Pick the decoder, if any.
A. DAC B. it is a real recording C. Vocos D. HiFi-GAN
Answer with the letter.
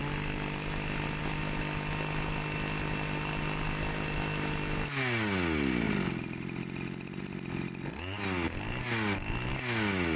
B